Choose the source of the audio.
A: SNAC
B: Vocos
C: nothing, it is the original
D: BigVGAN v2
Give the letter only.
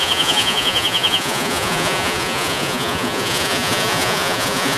B